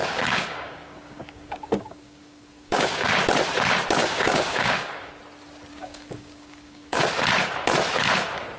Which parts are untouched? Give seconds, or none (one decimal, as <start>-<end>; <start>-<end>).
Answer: 3.1-4.0; 5.1-5.7; 7.1-8.6